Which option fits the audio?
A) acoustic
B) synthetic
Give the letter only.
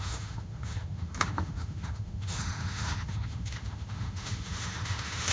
B